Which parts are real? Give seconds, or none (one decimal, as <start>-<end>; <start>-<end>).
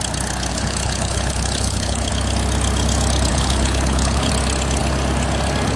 0.0-0.5; 2.1-3.3; 4.3-5.8